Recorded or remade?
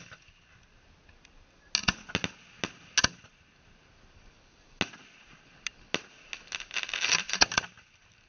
recorded